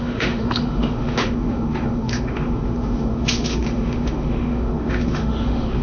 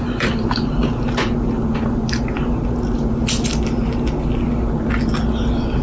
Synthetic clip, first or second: first